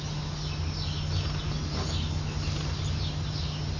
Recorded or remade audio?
recorded